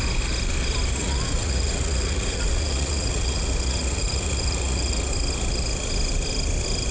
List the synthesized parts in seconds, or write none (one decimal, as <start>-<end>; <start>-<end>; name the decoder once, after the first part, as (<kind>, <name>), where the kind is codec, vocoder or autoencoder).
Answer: 1.0-5.1 (vocoder, Vocos)